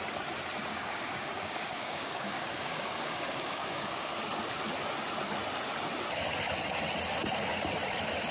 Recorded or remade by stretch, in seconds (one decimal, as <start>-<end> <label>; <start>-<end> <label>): 0.0-0.7 recorded; 0.7-4.1 remade; 4.1-8.3 recorded